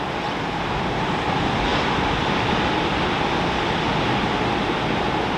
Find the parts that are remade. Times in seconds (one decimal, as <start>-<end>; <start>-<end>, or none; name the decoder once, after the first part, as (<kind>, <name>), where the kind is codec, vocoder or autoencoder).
0.0-5.4 (vocoder, BigVGAN v2)